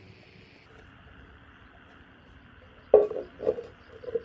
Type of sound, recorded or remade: recorded